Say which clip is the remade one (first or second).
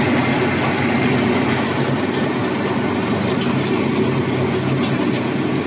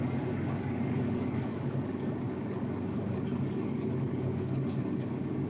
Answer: second